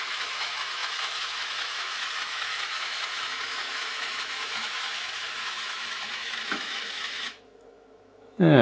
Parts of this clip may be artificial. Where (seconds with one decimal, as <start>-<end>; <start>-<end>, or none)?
0.0-8.6